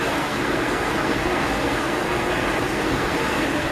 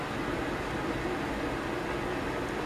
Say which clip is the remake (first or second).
first